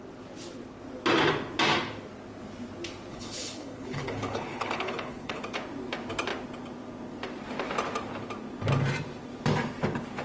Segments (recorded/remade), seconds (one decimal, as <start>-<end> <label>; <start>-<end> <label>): 0.0-3.1 recorded; 3.1-5.4 remade; 5.4-10.2 recorded